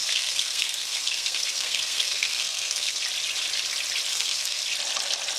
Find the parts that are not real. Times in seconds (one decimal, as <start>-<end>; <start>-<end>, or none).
0.0-3.0; 4.1-4.6

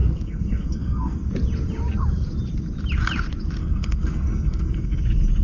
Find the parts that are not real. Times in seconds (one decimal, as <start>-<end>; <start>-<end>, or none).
0.0-1.3; 3.6-5.0